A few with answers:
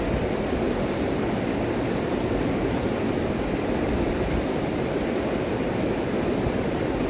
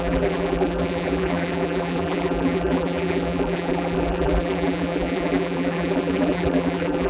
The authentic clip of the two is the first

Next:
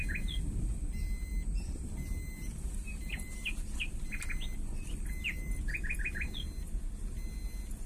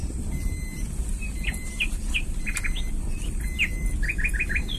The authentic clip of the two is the first